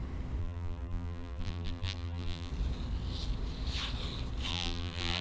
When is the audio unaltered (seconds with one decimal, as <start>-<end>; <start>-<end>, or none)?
0.0-0.4; 2.5-4.5